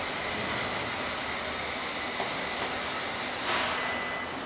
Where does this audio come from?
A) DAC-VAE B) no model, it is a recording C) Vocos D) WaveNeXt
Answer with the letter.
B